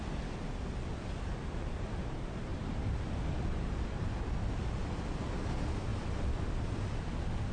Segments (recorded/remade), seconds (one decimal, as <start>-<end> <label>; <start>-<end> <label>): 0.0-2.5 recorded; 2.5-4.8 remade; 4.8-7.5 recorded